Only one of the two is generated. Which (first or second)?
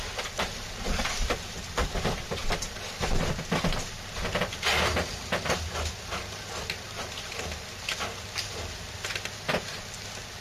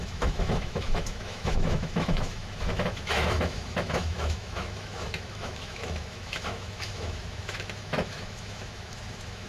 second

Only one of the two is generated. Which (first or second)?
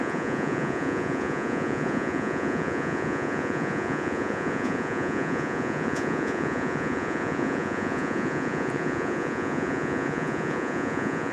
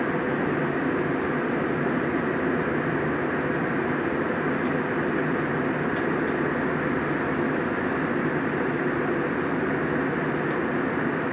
first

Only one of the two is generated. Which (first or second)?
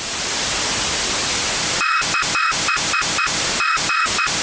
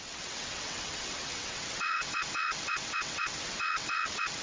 second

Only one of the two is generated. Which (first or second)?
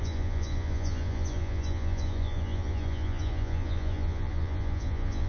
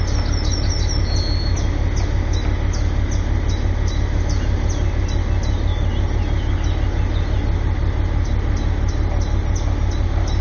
first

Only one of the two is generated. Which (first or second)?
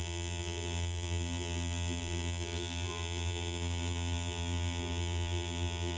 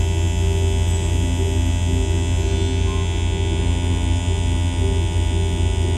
first